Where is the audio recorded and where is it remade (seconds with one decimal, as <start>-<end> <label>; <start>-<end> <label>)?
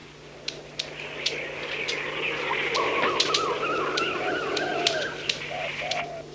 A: 0.0-6.3 recorded